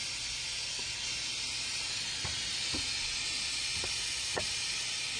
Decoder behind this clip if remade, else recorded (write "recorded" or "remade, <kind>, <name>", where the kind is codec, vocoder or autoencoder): recorded